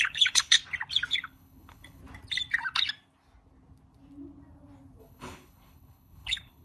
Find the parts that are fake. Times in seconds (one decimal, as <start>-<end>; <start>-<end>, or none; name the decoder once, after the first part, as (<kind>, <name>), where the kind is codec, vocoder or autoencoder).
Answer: 0.0-0.6 (codec, HILCodec); 1.1-2.0; 5.0-6.6